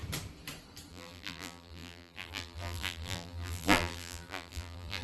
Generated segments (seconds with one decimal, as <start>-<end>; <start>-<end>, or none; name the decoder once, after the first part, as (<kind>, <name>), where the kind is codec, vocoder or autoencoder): 0.9-5.0 (vocoder, BigVGAN v2)